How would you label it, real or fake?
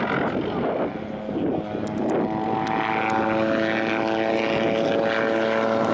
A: real